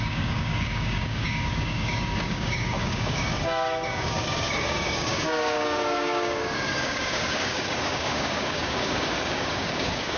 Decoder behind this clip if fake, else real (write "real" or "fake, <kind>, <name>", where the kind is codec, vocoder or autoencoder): fake, codec, DAC